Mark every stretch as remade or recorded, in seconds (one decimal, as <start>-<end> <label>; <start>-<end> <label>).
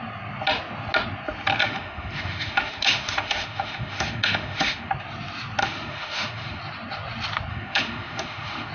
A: 0.0-1.6 recorded; 1.6-4.9 remade; 4.9-5.6 recorded; 5.6-6.6 remade; 6.6-7.5 recorded; 7.5-8.7 remade